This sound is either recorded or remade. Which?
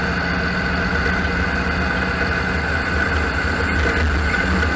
recorded